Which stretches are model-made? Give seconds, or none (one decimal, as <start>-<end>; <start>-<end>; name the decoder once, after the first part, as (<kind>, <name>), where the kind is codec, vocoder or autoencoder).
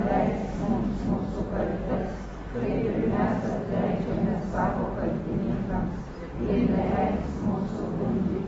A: 0.4-1.1 (autoencoder, DAC-VAE)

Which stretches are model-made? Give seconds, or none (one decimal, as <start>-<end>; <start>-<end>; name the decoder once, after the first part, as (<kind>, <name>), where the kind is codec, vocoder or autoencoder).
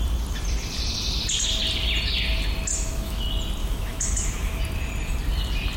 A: 2.7-3.2 (autoencoder, DAC-VAE); 3.6-4.6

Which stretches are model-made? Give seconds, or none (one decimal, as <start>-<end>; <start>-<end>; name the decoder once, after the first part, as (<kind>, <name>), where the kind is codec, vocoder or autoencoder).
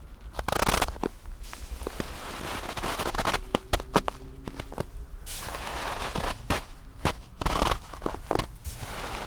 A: 1.1-1.7 (autoencoder, DAC-VAE); 5.1-8.1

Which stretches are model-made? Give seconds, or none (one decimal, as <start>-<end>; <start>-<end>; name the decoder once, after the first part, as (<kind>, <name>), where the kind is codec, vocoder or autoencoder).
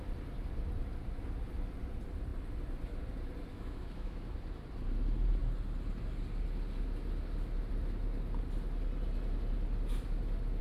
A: 3.5-4.3 (autoencoder, DAC-VAE)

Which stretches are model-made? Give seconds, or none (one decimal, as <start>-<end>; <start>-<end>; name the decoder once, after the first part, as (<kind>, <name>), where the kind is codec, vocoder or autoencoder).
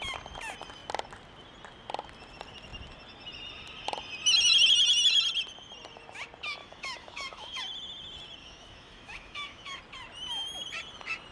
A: 6.6-7.6 (autoencoder, DAC-VAE); 8.4-9.8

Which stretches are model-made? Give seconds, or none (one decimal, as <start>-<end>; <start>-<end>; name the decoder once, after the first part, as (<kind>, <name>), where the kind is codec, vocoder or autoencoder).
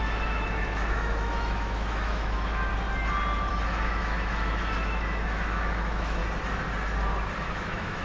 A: 0.0-2.7 (autoencoder, DAC-VAE); 3.5-6.2; 7.4-8.0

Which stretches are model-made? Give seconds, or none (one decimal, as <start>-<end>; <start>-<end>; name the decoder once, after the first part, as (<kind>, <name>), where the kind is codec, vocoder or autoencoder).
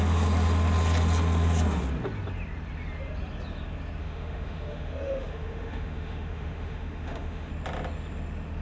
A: 4.0-7.5 (autoencoder, DAC-VAE)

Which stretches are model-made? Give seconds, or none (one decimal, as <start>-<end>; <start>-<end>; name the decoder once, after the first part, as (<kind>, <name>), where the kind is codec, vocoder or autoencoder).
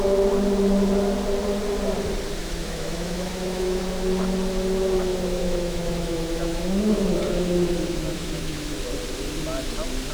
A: 2.4-3.8 (autoencoder, DAC-VAE); 5.1-8.8